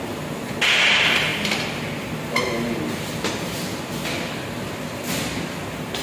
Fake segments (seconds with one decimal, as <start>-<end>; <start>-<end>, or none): none